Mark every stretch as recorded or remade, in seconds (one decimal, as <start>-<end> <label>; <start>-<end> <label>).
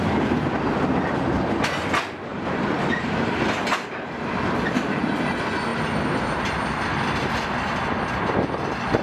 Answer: 0.0-2.3 recorded; 2.3-3.4 remade; 3.4-9.0 recorded